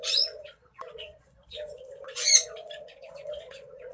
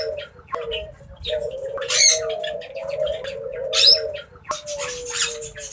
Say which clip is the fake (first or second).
first